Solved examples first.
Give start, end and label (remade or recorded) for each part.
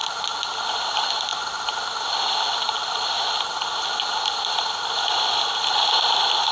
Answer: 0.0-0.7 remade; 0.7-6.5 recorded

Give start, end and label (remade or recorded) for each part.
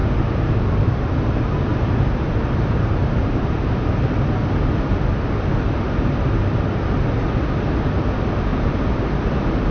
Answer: 0.0-1.0 remade; 1.0-1.7 recorded; 1.7-3.8 remade; 3.8-8.5 recorded; 8.5-9.7 remade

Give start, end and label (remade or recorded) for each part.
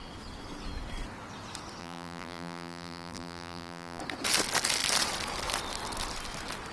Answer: 0.0-1.8 recorded; 1.8-4.0 remade; 4.0-6.7 recorded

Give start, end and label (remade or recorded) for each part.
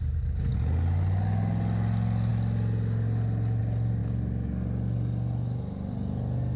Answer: 0.0-6.6 recorded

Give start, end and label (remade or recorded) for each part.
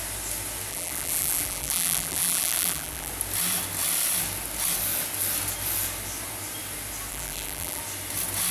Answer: 0.0-0.7 recorded; 0.7-3.1 remade; 3.1-7.1 recorded; 7.1-7.8 remade; 7.8-8.5 recorded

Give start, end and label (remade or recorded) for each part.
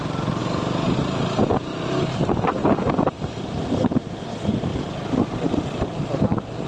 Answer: 0.0-6.7 recorded